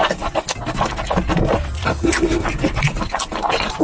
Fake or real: real